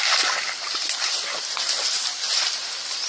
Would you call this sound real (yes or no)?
yes